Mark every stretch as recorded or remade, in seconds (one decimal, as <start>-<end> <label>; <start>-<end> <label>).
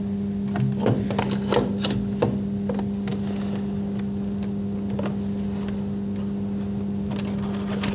0.0-7.9 recorded